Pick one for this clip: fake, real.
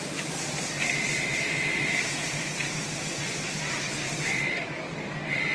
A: fake